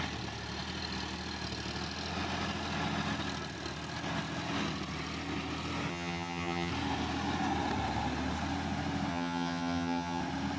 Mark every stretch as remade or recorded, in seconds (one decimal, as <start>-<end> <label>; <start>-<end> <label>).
0.0-5.9 recorded; 5.9-6.7 remade; 6.7-9.1 recorded; 9.1-10.2 remade; 10.2-10.6 recorded